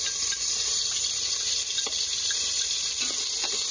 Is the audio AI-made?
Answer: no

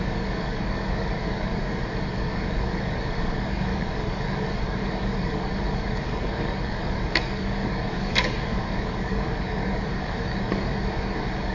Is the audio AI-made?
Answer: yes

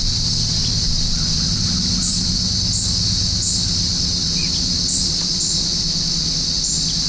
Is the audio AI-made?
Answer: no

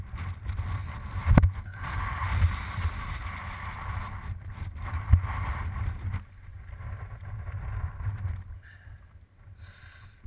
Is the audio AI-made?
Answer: no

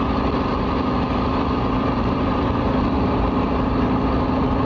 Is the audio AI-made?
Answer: no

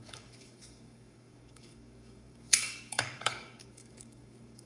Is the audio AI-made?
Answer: yes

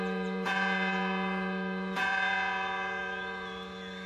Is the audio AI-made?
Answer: yes